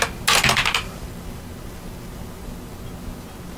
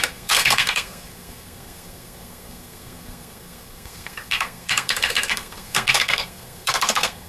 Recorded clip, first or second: first